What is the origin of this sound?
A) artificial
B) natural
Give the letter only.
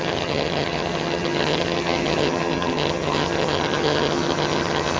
A